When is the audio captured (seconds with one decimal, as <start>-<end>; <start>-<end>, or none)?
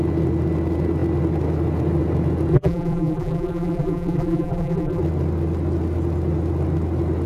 0.0-2.5; 5.0-7.3